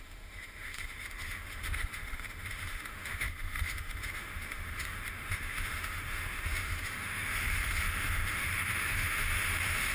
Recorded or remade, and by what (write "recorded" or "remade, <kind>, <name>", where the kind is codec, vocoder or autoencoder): remade, autoencoder, DAC-VAE